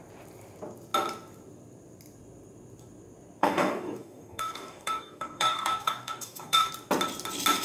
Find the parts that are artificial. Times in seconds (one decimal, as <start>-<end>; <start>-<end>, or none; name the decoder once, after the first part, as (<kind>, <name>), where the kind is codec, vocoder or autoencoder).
3.4-6.7 (codec, DAC)